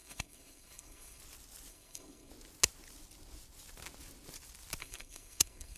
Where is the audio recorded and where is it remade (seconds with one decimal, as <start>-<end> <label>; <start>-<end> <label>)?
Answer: 0.0-1.2 remade; 1.2-1.7 recorded; 1.7-2.3 remade; 2.3-4.8 recorded; 4.8-5.8 remade